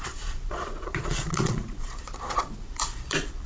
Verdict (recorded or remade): remade